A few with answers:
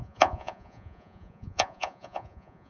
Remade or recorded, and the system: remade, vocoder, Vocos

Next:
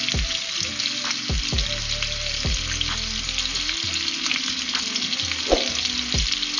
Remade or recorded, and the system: recorded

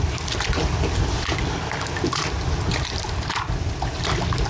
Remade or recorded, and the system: recorded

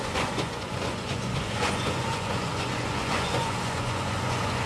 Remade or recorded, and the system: remade, vocoder, Vocos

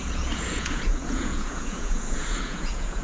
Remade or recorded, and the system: remade, vocoder, Vocos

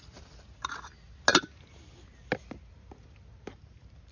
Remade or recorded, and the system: recorded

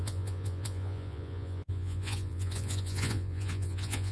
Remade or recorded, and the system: remade, vocoder, Vocos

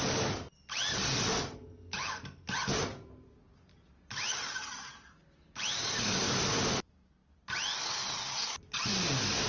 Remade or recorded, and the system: recorded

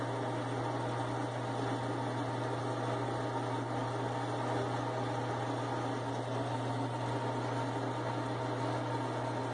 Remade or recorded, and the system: recorded